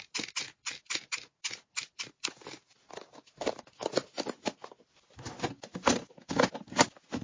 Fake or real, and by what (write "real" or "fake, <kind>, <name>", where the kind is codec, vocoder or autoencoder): real